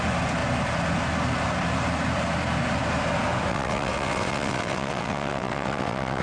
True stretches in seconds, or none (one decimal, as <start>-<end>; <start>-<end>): 0.0-3.5